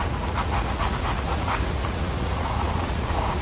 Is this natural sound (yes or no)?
no